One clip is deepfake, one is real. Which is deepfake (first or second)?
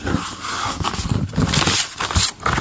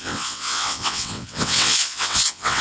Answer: second